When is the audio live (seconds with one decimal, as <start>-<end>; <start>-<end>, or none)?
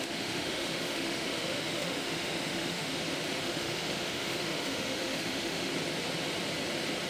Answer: 2.9-3.4; 5.7-7.1